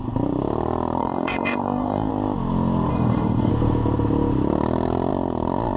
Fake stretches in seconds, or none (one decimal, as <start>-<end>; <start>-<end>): 1.0-2.1; 2.9-3.5

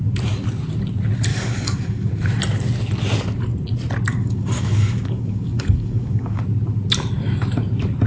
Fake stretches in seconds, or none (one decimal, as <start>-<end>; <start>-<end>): 1.3-2.1; 4.1-6.4

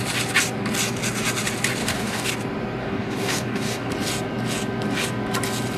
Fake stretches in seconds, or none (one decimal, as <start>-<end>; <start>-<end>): 1.8-2.3; 2.8-3.9

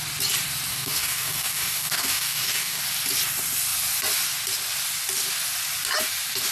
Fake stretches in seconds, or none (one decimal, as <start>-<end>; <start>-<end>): 0.7-2.8

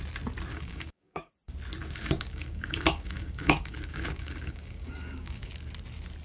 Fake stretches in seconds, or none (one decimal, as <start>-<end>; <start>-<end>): 0.5-1.3; 1.8-5.5